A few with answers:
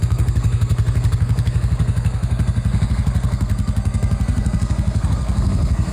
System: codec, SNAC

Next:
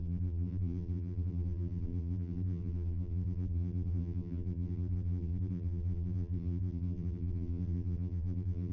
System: vocoder, BigVGAN v2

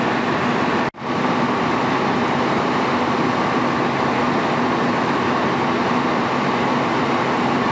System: none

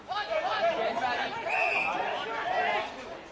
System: none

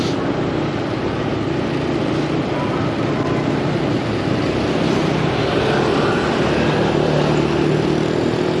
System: none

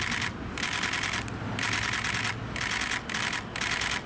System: none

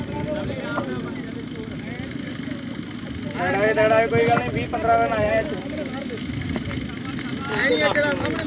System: none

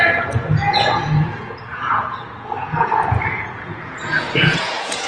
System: vocoder, Vocos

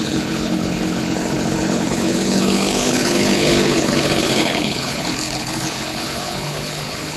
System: codec, HILCodec